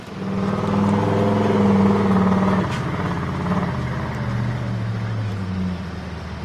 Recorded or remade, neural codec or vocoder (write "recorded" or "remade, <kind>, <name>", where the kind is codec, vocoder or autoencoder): recorded